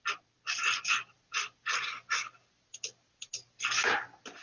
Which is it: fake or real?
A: real